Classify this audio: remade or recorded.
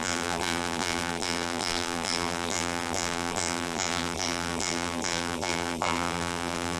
remade